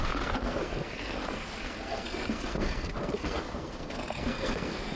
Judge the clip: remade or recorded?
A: remade